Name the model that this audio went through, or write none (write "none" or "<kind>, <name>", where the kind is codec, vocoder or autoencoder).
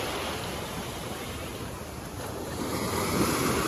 vocoder, BigVGAN v2